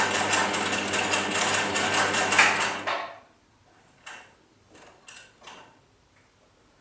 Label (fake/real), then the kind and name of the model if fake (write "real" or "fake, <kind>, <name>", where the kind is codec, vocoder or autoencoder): real